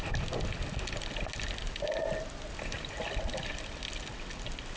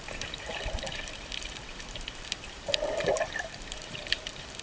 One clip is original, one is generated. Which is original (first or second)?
first